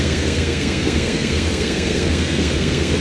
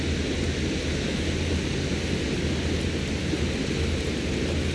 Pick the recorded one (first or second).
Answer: second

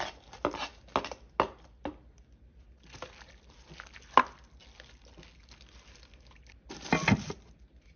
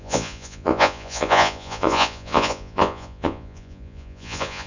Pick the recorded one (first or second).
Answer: first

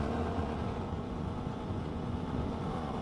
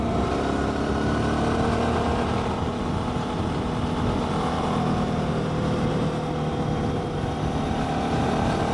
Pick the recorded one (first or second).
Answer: second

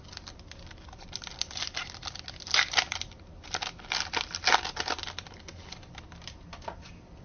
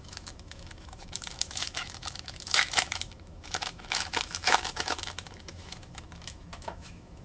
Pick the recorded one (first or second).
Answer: first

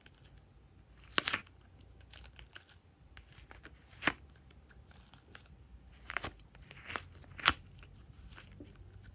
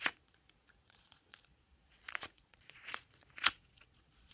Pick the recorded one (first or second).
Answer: first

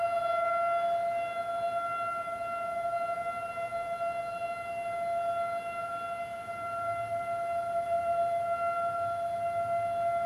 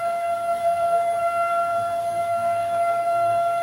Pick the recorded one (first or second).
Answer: first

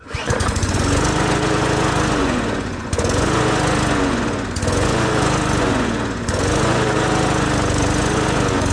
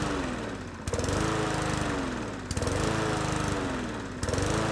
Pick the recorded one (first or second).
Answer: second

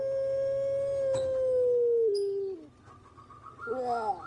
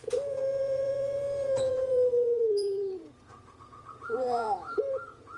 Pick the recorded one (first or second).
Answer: first